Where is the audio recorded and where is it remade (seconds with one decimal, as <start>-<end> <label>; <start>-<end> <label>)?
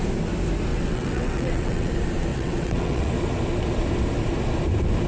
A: 0.0-0.7 recorded; 0.7-1.9 remade; 1.9-2.3 recorded; 2.3-3.1 remade; 3.1-5.1 recorded